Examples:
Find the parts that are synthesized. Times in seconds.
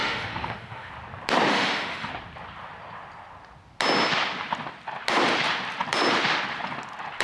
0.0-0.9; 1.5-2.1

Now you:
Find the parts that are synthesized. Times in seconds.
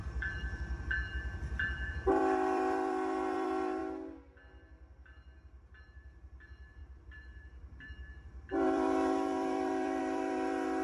0.0-3.8; 5.8-10.8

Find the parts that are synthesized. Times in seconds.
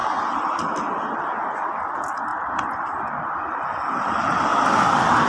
none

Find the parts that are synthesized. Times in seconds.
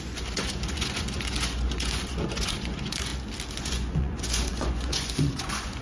0.0-3.1; 3.6-5.8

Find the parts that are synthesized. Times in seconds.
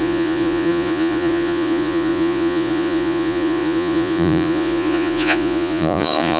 0.0-6.4